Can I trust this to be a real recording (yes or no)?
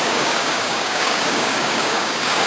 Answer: no